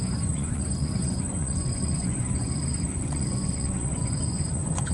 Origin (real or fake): fake